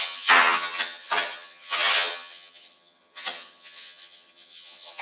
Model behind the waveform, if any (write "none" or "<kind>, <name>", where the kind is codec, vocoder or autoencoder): vocoder, HiFi-GAN